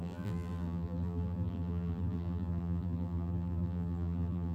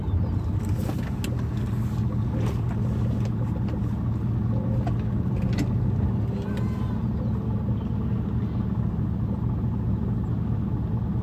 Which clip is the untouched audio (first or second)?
second